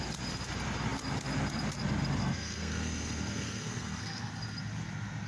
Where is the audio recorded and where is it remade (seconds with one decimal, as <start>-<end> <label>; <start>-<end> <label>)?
0.0-2.2 recorded; 2.2-4.3 remade; 4.3-5.3 recorded